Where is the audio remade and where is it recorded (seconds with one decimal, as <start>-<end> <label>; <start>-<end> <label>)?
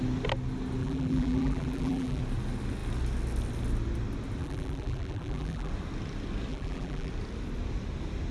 0.0-0.8 recorded; 0.8-2.2 remade; 2.2-4.4 recorded; 4.4-5.7 remade; 5.7-6.5 recorded; 6.5-7.1 remade; 7.1-8.3 recorded